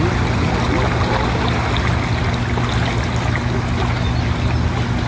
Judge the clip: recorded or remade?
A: recorded